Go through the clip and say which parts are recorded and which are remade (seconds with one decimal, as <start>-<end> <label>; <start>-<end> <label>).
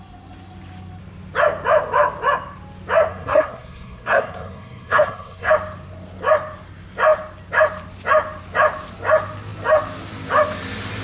0.0-3.1 recorded; 3.1-5.5 remade; 5.5-11.0 recorded